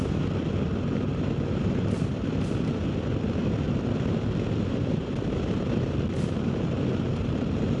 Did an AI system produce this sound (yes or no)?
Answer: no